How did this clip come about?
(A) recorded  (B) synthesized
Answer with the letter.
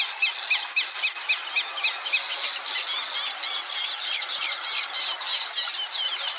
A